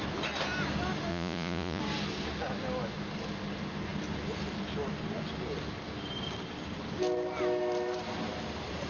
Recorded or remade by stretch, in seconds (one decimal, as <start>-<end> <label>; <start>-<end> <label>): 0.0-1.1 recorded; 1.1-1.8 remade; 1.8-8.9 recorded